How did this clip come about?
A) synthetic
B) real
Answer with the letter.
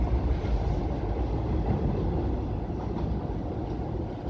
B